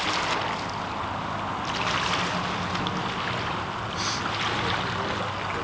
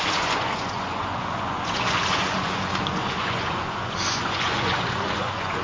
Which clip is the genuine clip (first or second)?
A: first